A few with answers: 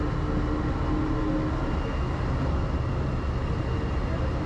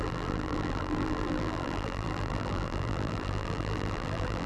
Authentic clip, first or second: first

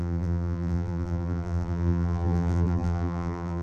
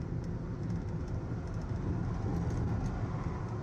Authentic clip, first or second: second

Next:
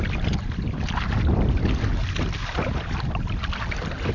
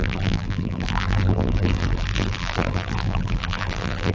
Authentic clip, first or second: first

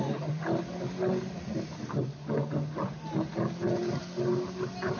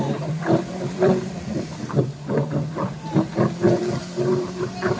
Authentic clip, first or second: first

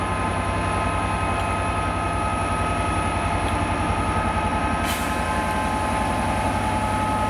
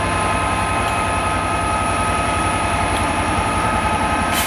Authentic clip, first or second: first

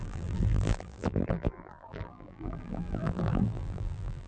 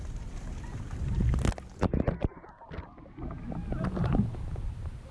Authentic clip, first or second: second